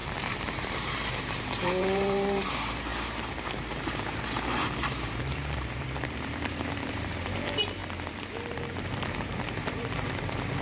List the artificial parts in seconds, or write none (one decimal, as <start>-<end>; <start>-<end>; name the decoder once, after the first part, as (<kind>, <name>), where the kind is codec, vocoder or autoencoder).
0.0-7.8 (vocoder, BigVGAN v2); 8.5-10.6